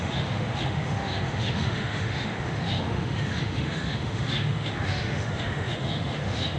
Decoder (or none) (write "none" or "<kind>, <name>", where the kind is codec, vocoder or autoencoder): autoencoder, DAC-VAE